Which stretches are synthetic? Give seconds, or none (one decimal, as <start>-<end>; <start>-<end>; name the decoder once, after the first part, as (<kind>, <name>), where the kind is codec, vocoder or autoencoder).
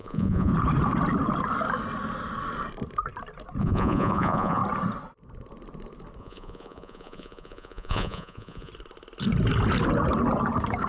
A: 0.0-0.5 (vocoder, Vocos); 3.6-4.6; 6.2-8.7